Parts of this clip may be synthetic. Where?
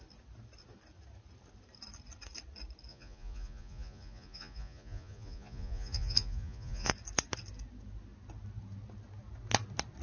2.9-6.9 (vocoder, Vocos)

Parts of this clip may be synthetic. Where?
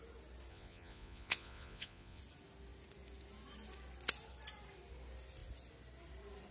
0.5-2.2 (vocoder, Vocos)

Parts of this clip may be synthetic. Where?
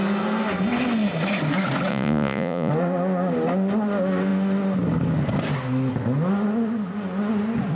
1.9-2.7 (vocoder, Vocos)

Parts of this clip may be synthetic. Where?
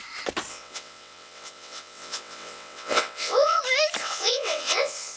0.5-3.6 (vocoder, WaveNeXt); 4.0-5.2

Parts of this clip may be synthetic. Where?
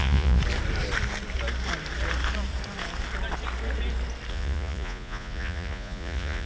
0.0-0.4 (vocoder, Vocos); 4.3-6.5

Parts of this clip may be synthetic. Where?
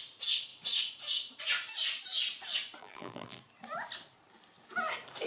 2.8-3.4 (vocoder, BigVGAN v2)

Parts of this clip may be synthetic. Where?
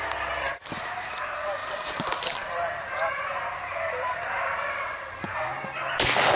1.6-5.4 (vocoder, BigVGAN v2)